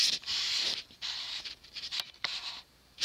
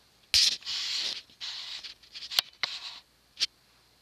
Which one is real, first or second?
second